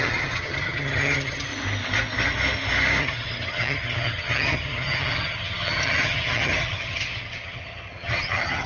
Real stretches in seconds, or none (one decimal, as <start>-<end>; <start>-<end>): 1.5-3.0

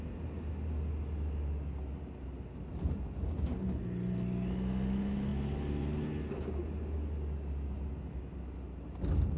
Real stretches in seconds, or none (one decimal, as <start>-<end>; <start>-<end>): 0.0-9.4

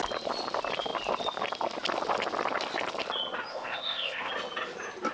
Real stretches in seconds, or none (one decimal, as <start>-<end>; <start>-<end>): 0.0-3.5; 4.3-5.1

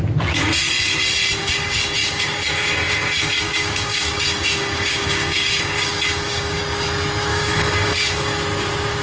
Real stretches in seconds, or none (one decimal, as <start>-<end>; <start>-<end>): 0.0-1.4; 6.6-7.3; 8.4-9.0

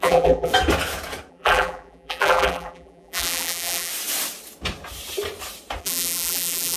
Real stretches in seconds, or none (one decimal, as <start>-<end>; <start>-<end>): 0.5-1.3; 3.9-5.8

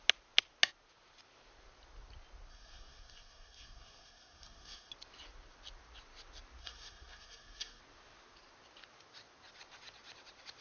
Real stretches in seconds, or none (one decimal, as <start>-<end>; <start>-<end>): 0.0-2.5; 4.9-6.6; 7.8-10.6